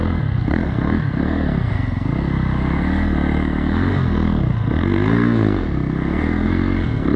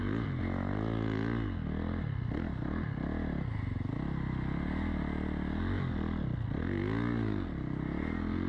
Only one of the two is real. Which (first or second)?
second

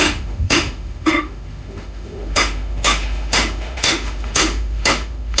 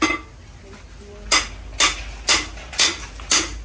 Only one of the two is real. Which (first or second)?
second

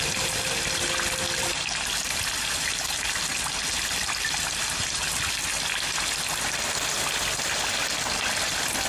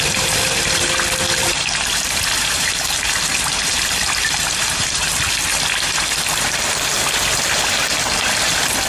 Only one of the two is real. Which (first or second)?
first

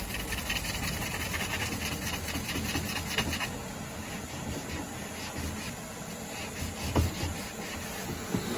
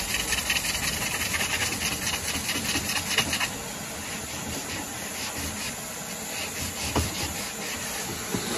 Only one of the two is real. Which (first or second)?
first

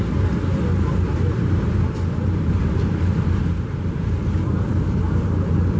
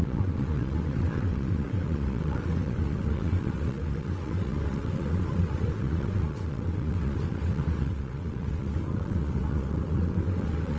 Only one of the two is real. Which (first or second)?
first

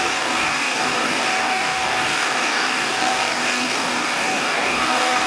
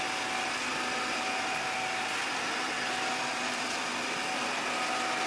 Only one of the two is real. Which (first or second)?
second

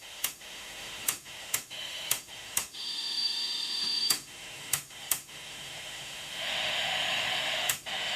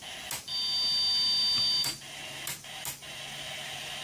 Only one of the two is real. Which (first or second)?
second